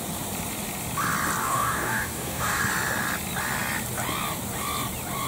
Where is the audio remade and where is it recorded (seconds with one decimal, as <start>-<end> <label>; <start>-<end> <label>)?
0.0-1.4 recorded; 1.4-2.6 remade; 2.6-5.3 recorded